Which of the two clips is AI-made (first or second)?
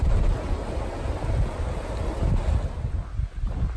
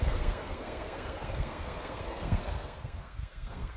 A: second